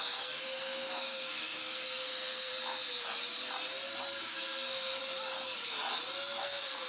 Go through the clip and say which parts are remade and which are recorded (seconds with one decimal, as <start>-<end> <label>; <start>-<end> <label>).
0.0-2.5 remade; 2.5-4.2 recorded; 4.2-5.0 remade; 5.0-6.4 recorded; 6.4-6.9 remade